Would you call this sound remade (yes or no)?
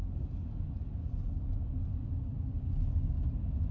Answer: no